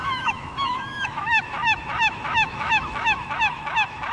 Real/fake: fake